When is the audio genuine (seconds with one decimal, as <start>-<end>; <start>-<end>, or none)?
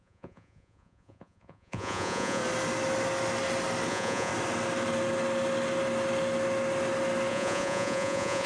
2.4-3.9; 4.3-7.3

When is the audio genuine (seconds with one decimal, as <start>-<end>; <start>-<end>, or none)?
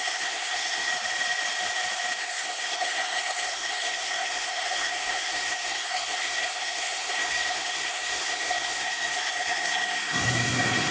0.9-2.2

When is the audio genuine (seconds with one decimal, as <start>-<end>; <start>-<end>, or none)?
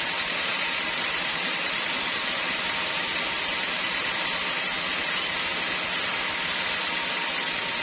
5.5-7.1